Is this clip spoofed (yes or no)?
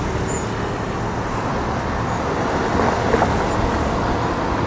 no